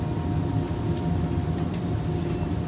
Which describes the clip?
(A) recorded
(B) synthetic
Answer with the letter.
A